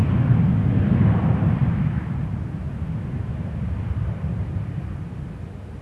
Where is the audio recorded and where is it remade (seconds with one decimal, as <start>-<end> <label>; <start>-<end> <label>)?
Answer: 0.0-5.8 recorded